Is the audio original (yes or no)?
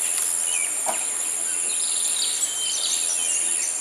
yes